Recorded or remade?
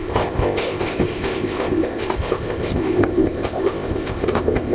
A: remade